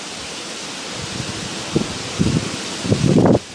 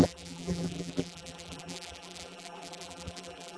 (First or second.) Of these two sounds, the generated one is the second